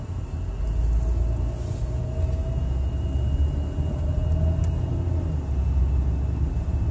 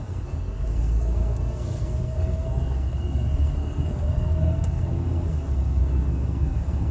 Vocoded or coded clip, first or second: second